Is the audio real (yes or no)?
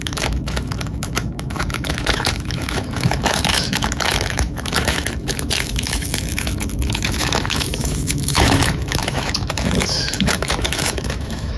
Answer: no